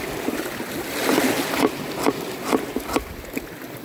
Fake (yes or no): no